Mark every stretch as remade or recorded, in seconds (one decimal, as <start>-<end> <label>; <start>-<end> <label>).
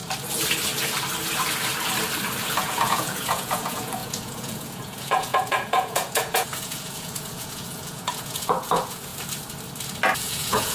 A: 0.0-2.4 recorded; 2.4-9.1 remade; 9.1-10.2 recorded; 10.2-10.7 remade